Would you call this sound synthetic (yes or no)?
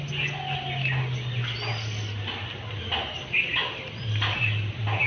no